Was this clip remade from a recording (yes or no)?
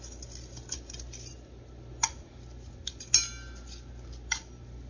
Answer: no